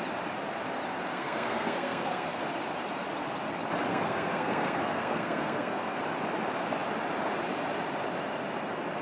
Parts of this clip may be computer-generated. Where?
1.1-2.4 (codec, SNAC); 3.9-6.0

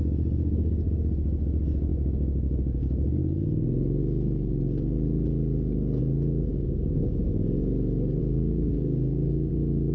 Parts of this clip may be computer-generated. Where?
6.5-7.2 (codec, DAC); 8.2-9.5